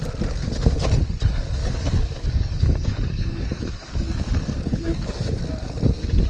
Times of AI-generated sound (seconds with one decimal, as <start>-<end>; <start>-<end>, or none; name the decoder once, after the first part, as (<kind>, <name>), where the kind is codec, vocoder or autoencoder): 1.6-5.4 (codec, DAC)